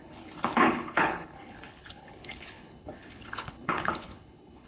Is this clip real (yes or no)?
no